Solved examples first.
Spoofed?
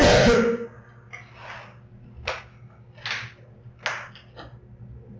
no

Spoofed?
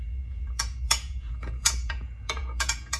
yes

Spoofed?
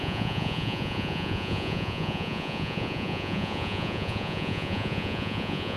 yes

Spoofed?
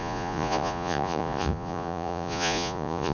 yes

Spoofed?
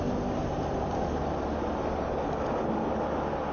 no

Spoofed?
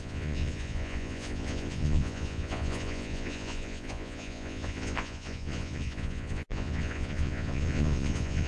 yes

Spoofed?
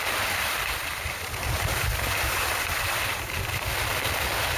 no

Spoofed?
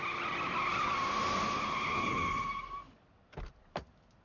no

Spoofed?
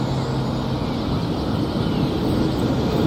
no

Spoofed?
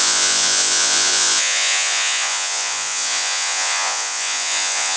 yes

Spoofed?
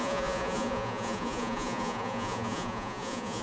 yes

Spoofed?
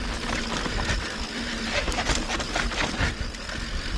no